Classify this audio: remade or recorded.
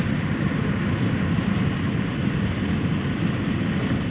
recorded